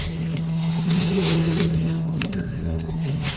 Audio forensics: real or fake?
fake